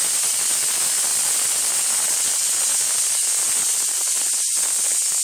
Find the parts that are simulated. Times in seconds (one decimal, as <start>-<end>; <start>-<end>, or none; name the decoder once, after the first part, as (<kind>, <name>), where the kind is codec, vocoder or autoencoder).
3.6-4.5 (vocoder, BigVGAN v2)